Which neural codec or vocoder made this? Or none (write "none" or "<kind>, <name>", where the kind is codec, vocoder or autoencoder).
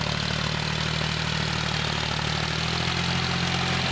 none